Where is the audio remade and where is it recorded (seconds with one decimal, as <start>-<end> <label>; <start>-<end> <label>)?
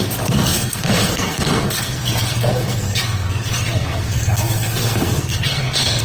0.0-6.0 remade